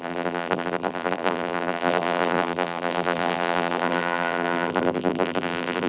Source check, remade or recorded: remade